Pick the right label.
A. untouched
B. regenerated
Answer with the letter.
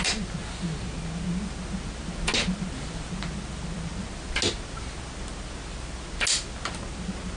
A